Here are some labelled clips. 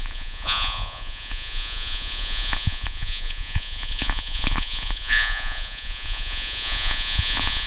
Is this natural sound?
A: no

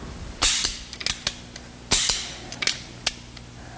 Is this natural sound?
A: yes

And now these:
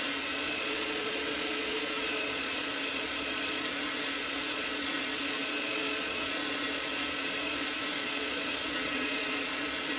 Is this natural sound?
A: no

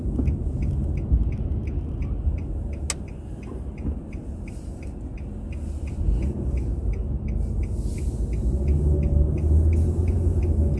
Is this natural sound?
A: yes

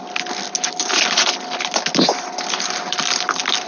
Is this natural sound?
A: yes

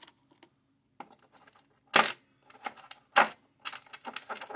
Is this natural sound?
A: yes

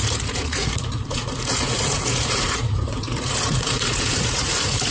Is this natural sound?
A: no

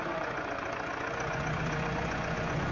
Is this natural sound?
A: no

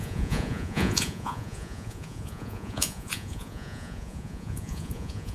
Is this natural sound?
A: no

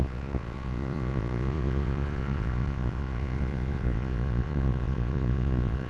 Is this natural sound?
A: no